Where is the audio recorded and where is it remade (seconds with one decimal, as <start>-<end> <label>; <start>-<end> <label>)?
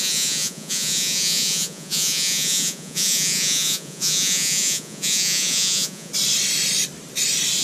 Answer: 0.0-6.1 remade; 6.1-7.6 recorded